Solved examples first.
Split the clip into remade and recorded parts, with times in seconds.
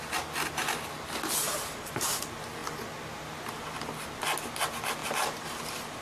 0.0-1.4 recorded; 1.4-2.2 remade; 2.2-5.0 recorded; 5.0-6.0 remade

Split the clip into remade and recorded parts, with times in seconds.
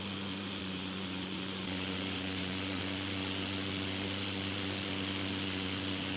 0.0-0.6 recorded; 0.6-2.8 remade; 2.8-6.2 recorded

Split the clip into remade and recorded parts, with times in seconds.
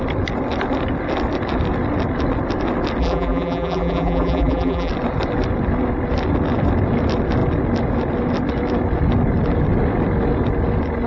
0.0-3.0 recorded; 3.0-4.9 remade; 4.9-11.1 recorded